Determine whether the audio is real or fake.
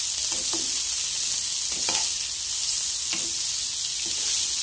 real